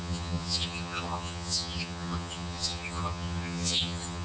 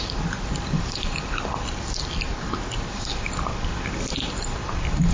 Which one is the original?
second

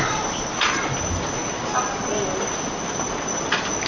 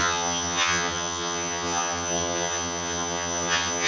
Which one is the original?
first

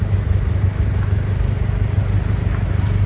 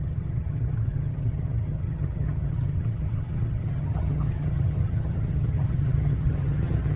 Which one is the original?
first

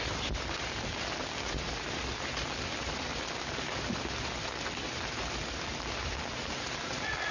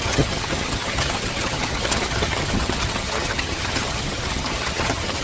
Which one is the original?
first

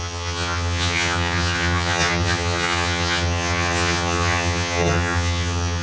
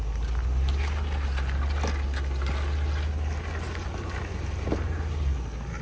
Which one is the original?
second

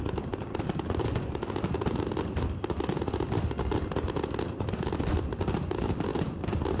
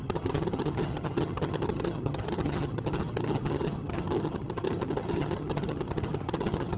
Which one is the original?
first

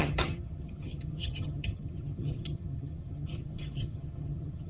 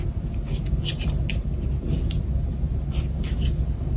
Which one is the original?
second